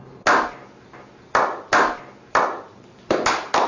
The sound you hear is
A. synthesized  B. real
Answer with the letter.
B